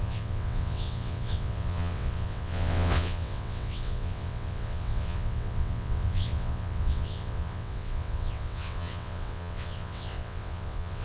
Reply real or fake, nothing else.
fake